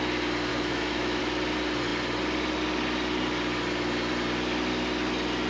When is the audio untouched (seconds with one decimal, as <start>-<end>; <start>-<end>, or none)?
0.0-0.5; 1.2-5.5